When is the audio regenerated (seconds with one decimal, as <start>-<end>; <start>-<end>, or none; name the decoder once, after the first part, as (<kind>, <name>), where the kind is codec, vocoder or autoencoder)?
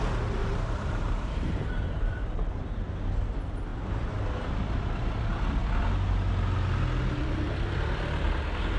0.4-2.5 (vocoder, BigVGAN v2)